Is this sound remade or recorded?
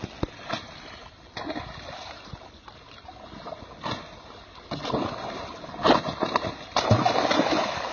recorded